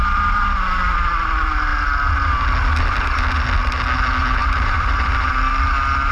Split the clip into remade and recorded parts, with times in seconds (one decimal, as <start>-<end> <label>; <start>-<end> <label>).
0.0-0.8 remade; 0.8-4.4 recorded; 4.4-5.3 remade; 5.3-6.1 recorded